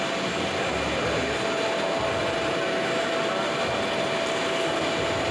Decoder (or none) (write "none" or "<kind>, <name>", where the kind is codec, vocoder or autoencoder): none